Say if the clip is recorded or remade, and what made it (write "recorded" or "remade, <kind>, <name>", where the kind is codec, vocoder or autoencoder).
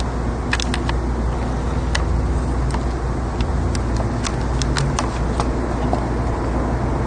recorded